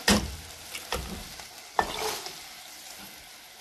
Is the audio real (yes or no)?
yes